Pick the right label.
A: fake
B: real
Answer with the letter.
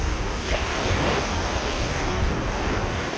A